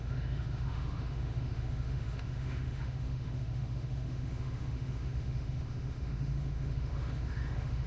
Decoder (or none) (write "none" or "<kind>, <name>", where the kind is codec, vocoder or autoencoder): autoencoder, DAC-VAE